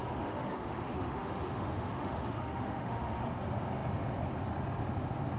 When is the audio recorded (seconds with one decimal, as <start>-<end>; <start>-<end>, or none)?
3.2-5.4